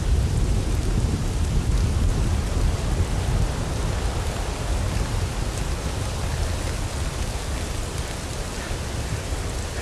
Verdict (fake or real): fake